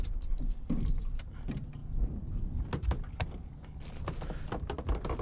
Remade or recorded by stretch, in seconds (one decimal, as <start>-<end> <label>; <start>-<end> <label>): 0.0-5.2 recorded

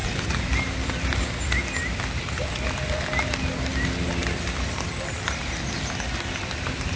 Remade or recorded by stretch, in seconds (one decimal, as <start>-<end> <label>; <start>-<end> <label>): 0.0-0.9 remade; 0.9-7.0 recorded

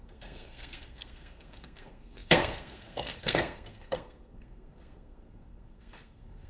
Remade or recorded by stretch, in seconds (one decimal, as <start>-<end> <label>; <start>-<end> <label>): 0.0-6.5 remade